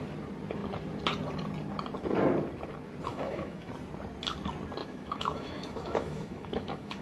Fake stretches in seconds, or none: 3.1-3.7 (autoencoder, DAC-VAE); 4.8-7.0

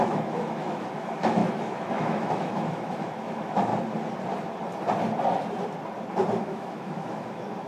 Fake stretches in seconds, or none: 0.0-3.7 (autoencoder, DAC-VAE); 6.4-7.7

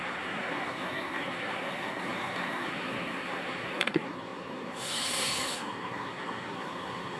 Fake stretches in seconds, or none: 0.0-7.2 (codec, SNAC)

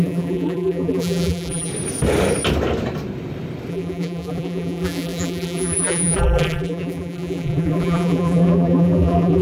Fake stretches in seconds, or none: 0.0-1.7 (vocoder, BigVGAN v2); 3.7-9.4

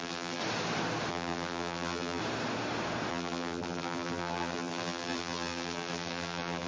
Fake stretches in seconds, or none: 0.0-0.4 (vocoder, BigVGAN v2); 1.1-2.2; 3.1-6.7

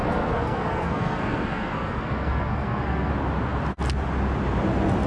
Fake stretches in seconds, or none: 0.0-3.1 (codec, SNAC)

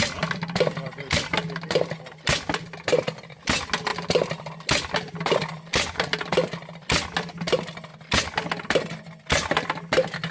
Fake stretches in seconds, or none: none